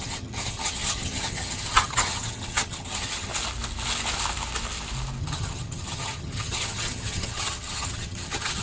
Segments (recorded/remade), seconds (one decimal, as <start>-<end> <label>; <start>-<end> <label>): 0.0-3.3 remade; 3.3-5.2 recorded; 5.2-8.6 remade